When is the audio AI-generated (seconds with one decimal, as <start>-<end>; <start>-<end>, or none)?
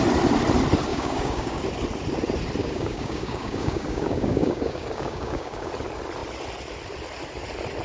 0.9-1.6; 2.6-5.7